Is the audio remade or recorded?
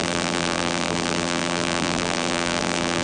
remade